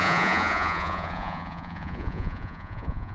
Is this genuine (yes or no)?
no